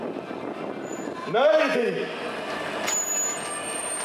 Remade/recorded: recorded